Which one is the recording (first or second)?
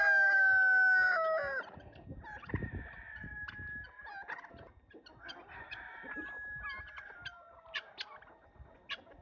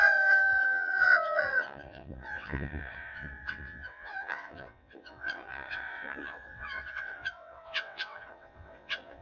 first